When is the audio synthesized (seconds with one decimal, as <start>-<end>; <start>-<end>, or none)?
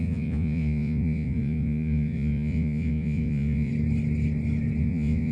0.0-3.7; 4.8-5.3